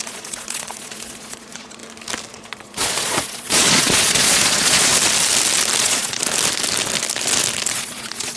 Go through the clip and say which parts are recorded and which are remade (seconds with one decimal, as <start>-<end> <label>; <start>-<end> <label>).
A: 0.0-1.8 remade; 1.8-2.3 recorded; 2.3-4.9 remade; 4.9-5.8 recorded; 5.8-6.2 remade; 6.2-7.7 recorded; 7.7-8.4 remade

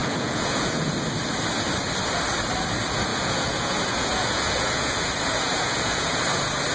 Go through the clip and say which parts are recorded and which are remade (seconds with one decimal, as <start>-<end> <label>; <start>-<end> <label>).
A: 0.0-0.9 remade; 0.9-3.1 recorded; 3.1-6.2 remade; 6.2-6.7 recorded

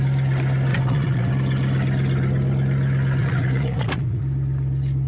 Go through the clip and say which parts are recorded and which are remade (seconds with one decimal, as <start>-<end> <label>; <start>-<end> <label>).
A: 0.0-0.7 recorded; 0.7-1.3 remade; 1.3-3.2 recorded; 3.2-4.2 remade; 4.2-5.1 recorded

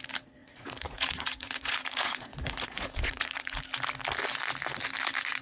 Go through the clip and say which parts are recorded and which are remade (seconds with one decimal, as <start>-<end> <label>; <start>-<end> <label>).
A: 0.0-0.4 recorded; 0.4-3.6 remade; 3.6-5.4 recorded